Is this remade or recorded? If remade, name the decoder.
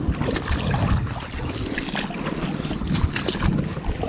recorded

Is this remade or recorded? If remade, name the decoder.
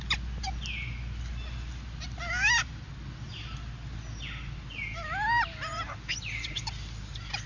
recorded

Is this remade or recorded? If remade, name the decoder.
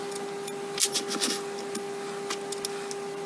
recorded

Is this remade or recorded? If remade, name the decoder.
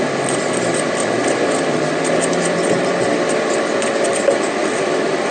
recorded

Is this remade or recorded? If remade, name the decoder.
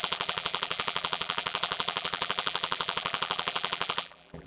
remade, vocoder, BigVGAN v2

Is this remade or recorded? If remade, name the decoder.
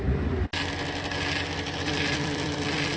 recorded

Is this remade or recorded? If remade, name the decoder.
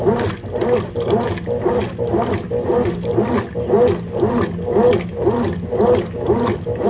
recorded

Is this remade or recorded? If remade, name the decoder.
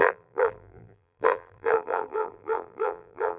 remade, vocoder, BigVGAN v2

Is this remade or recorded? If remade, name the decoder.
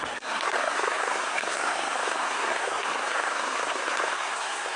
remade, codec, SNAC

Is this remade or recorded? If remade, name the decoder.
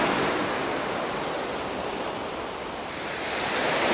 recorded